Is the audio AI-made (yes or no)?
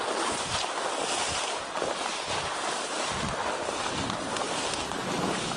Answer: no